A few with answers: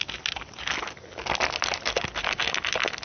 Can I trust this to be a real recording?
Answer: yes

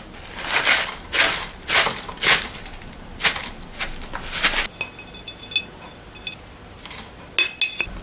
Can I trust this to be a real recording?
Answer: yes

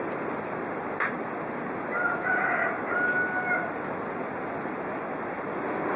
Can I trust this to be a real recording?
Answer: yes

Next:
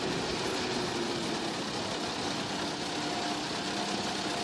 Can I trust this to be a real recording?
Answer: yes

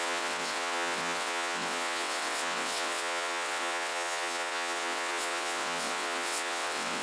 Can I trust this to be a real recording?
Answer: no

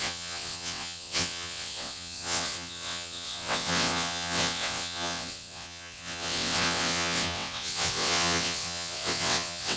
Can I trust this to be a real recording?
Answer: no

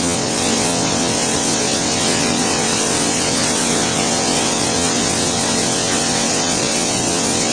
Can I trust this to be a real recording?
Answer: no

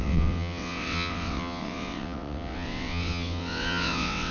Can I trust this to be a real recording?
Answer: no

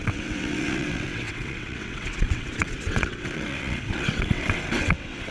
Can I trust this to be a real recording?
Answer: no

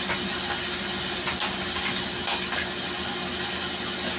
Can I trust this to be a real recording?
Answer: yes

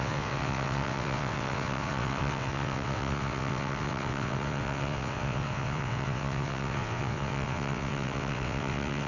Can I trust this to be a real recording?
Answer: no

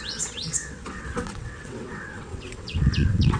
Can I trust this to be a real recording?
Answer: no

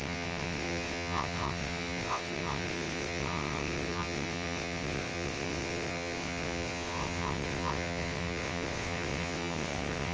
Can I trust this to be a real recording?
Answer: no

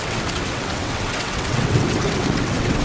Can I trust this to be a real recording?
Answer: no